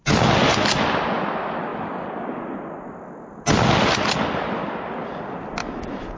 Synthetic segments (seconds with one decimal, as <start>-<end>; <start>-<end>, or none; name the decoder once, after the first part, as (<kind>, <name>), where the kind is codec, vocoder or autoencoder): 5.6-6.2 (autoencoder, DAC-VAE)